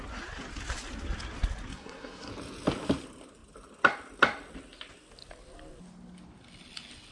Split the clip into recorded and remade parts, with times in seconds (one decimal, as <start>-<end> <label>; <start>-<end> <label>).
0.0-1.7 recorded; 1.7-2.3 remade; 2.3-7.1 recorded